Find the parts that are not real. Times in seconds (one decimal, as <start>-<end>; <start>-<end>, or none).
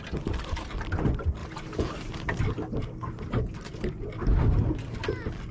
none